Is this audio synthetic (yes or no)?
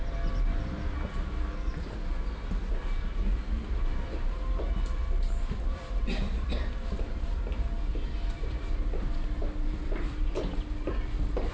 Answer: yes